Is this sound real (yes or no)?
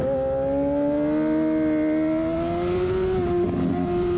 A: yes